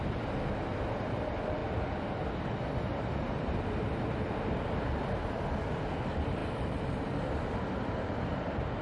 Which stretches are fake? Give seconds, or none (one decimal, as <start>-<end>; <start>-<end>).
none